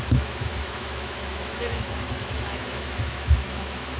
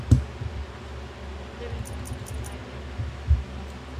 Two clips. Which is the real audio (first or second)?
second